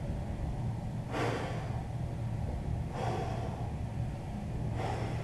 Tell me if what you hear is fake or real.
real